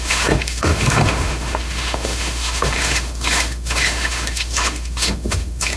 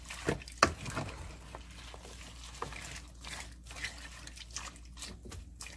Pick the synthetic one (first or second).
first